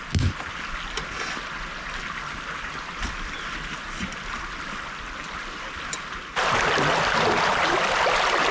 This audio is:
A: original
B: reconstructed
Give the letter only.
A